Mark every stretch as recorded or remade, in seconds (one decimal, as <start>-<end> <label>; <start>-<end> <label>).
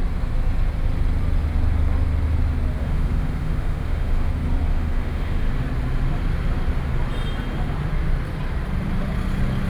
0.0-2.8 recorded; 2.8-4.3 remade; 4.3-4.7 recorded; 4.7-5.5 remade; 5.5-9.7 recorded